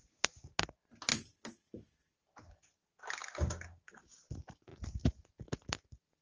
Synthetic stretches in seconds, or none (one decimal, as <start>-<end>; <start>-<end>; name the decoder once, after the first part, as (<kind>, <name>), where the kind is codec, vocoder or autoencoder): 3.2-4.2 (codec, DAC)